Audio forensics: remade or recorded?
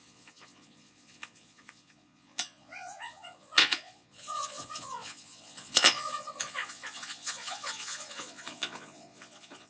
remade